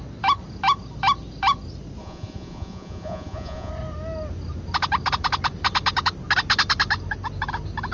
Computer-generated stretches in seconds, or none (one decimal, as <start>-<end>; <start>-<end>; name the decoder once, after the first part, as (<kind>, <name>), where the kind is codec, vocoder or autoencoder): 2.0-3.7 (vocoder, Vocos)